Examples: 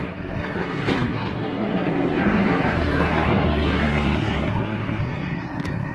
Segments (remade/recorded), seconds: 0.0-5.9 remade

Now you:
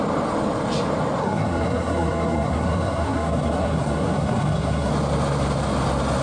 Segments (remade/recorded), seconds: 0.0-1.2 recorded; 1.2-4.9 remade; 4.9-6.2 recorded